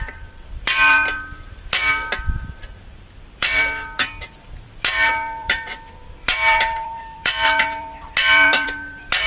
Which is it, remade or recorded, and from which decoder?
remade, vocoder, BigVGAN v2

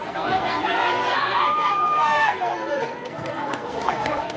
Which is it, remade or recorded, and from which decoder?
remade, codec, SNAC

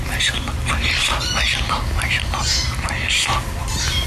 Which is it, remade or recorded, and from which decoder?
recorded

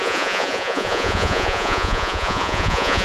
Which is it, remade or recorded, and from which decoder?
remade, vocoder, Vocos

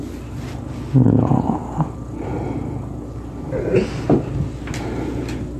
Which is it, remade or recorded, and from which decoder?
recorded